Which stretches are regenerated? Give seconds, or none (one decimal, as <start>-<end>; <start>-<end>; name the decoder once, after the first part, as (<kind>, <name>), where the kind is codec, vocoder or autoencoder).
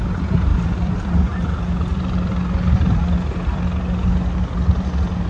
0.5-2.0 (vocoder, BigVGAN v2)